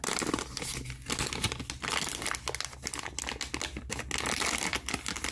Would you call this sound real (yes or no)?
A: yes